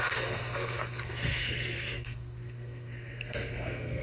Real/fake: fake